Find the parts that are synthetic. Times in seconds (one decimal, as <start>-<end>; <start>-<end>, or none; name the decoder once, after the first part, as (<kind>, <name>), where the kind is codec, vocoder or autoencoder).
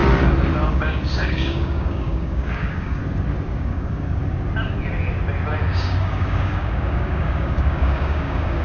0.7-3.0 (codec, DAC); 3.6-4.2; 5.6-8.6